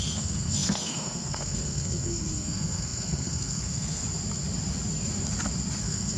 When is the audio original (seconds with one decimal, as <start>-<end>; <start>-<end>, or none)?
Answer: 4.0-5.8